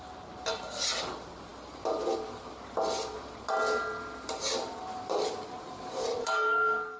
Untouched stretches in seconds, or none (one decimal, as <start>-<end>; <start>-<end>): 0.0-6.2